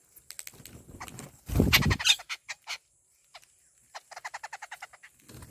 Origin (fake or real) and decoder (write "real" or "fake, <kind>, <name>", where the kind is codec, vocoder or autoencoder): real